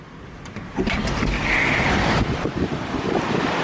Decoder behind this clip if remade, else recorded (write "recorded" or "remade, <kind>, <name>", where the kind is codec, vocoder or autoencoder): recorded